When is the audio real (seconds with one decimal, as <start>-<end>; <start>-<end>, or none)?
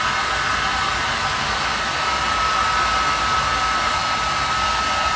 0.0-5.2